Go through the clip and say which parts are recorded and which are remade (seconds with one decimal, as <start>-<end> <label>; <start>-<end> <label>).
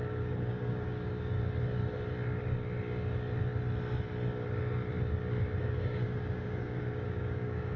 0.0-1.4 remade; 1.4-5.6 recorded; 5.6-7.8 remade